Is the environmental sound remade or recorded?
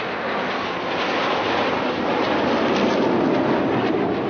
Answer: recorded